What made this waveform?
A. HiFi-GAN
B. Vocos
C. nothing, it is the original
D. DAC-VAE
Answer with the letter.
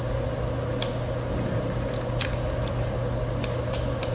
C